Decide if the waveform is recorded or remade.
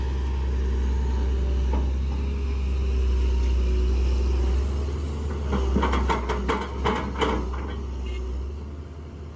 recorded